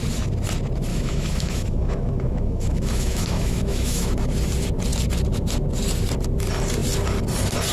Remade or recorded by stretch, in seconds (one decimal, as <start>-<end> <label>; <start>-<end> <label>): 0.0-0.9 recorded; 0.9-4.1 remade; 4.1-7.7 recorded